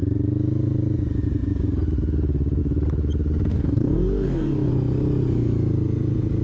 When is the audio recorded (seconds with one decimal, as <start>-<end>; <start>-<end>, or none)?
0.0-3.5; 4.7-6.4